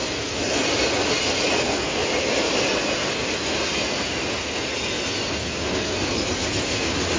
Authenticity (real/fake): real